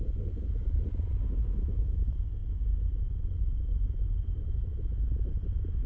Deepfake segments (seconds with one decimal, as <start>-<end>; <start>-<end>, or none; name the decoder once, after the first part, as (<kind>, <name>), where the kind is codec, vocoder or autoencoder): 1.4-2.0 (autoencoder, DAC-VAE)